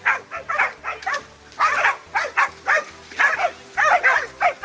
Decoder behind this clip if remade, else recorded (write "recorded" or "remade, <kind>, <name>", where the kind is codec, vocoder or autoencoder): recorded